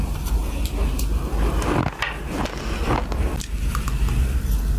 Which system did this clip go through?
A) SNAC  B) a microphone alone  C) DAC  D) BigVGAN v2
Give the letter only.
B